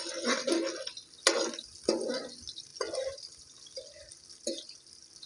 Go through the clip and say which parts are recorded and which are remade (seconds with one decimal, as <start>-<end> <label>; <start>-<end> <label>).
0.0-5.3 recorded